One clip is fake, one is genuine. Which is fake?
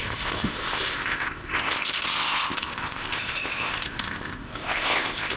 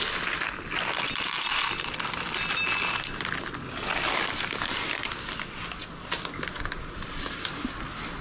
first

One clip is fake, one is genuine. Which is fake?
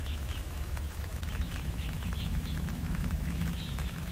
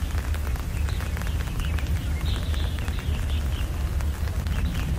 first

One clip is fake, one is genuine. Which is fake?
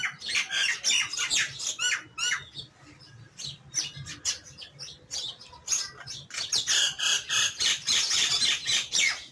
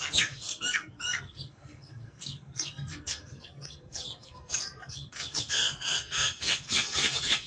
second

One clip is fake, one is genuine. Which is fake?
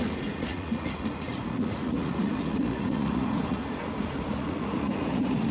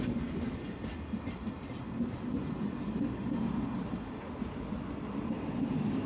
first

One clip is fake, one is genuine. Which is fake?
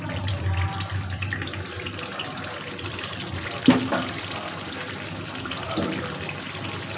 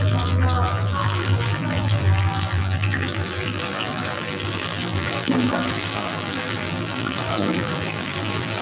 second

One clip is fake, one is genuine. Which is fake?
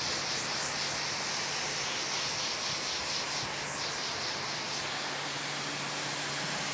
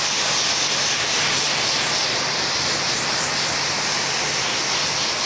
second